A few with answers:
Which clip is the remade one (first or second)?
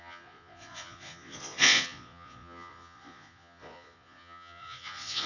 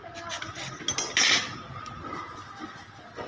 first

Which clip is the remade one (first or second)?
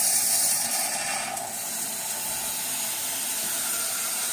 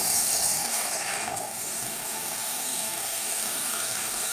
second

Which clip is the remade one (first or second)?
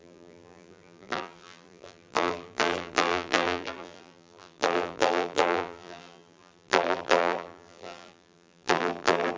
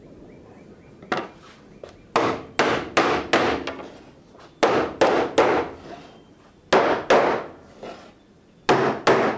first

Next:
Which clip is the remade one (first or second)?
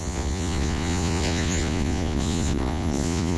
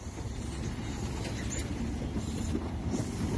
first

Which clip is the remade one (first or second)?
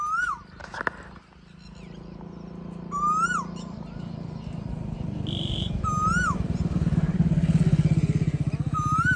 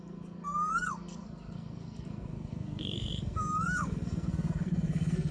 second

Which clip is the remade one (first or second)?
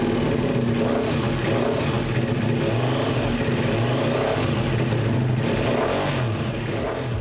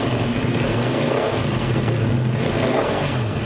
second